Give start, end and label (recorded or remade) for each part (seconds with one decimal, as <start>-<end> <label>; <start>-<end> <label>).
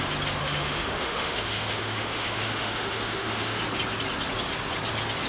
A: 0.0-0.4 recorded; 0.4-3.6 remade; 3.6-5.3 recorded